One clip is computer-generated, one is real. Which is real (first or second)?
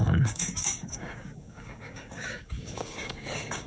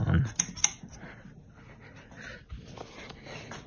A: second